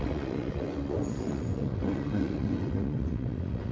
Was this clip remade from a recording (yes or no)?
yes